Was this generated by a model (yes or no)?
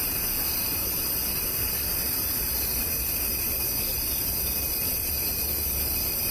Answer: yes